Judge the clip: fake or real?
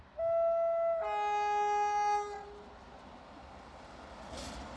real